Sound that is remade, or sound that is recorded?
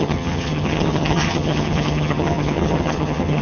remade